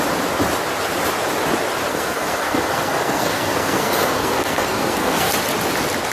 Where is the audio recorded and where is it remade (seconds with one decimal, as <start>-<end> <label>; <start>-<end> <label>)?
0.0-1.9 recorded; 1.9-5.3 remade; 5.3-6.1 recorded